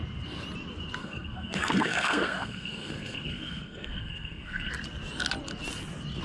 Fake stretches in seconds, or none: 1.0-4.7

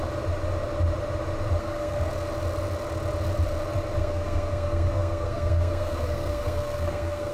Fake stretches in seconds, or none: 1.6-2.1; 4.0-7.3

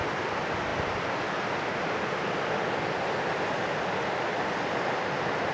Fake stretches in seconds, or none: none

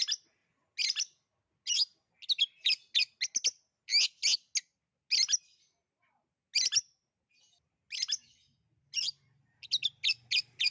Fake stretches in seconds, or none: none

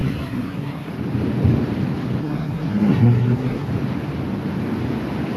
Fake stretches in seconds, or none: 0.0-0.9; 2.2-3.7

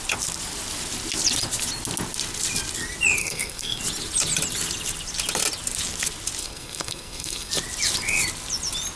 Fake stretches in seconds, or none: 3.2-3.8; 6.4-7.5

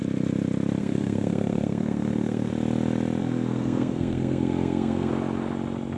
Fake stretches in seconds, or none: 0.8-2.5; 3.2-5.1